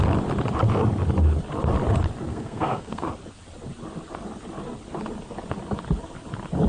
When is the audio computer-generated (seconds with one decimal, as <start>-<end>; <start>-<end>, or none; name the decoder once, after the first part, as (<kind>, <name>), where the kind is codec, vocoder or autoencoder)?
2.3-3.1 (codec, SNAC)